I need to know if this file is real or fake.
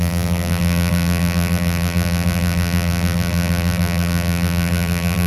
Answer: fake